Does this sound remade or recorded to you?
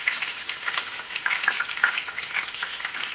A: remade